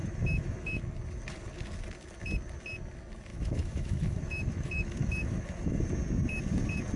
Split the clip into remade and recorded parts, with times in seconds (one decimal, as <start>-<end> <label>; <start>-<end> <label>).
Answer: 0.0-0.8 remade; 0.8-3.3 recorded; 3.3-5.8 remade; 5.8-7.0 recorded